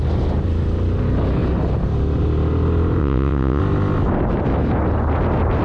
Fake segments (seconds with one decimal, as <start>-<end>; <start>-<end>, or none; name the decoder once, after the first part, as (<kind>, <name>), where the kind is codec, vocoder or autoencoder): 3.0-3.6 (vocoder, WaveNeXt)